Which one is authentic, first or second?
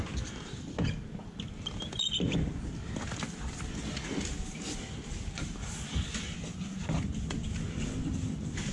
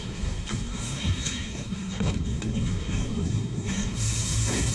first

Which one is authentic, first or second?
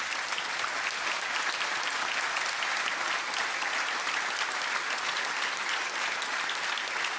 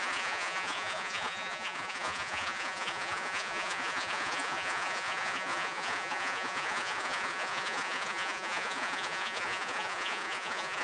first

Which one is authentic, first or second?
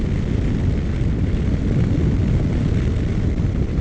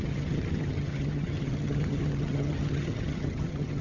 first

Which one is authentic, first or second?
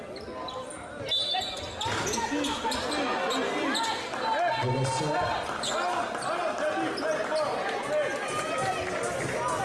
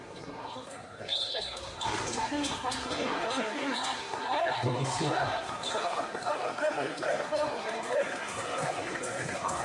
first